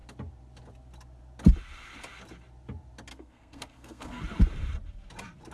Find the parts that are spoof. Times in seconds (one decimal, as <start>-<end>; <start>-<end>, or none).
3.1-4.2